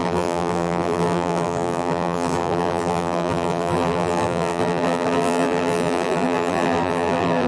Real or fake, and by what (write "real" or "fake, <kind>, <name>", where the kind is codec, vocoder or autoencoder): fake, vocoder, BigVGAN v2